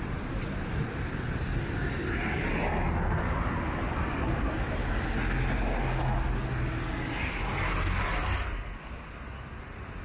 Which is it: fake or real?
real